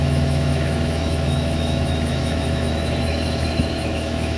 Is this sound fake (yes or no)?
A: yes